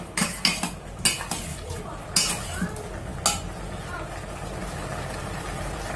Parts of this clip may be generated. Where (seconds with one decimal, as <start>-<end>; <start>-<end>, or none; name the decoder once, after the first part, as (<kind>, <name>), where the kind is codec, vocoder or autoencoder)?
1.5-2.3 (vocoder, BigVGAN v2)